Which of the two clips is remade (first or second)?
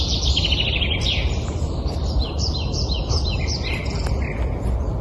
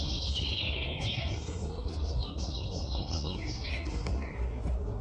second